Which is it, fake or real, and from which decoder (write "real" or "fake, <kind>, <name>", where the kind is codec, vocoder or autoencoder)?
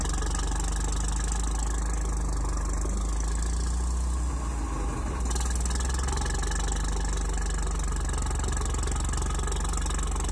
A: real